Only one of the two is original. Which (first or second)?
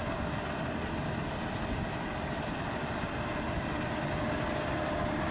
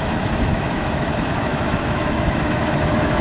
first